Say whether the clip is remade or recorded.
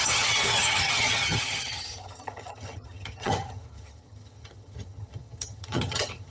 remade